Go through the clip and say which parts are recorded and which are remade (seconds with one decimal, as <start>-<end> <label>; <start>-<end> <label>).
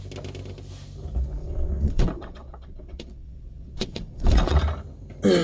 0.0-1.4 recorded; 1.4-4.6 remade; 4.6-5.4 recorded